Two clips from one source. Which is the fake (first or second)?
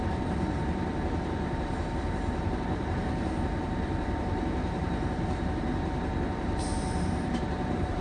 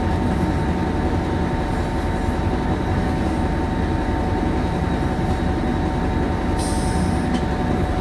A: first